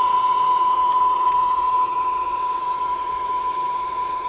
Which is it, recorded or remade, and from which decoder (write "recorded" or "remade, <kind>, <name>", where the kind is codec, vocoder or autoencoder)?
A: remade, vocoder, WaveNeXt